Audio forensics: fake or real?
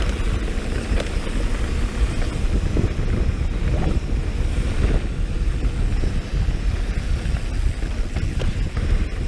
real